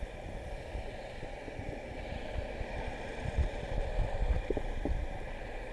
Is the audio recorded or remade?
recorded